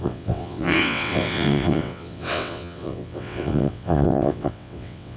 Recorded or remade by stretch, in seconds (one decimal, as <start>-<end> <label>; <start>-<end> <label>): 0.0-5.2 remade